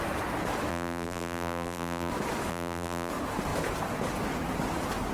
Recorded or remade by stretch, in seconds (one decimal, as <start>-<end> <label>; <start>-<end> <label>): 0.0-0.7 recorded; 0.7-2.1 remade; 2.1-2.5 recorded; 2.5-3.1 remade; 3.1-5.1 recorded